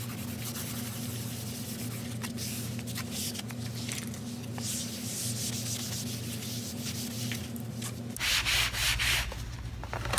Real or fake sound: real